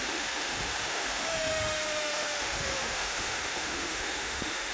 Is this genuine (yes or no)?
no